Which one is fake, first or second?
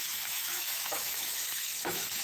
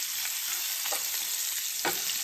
first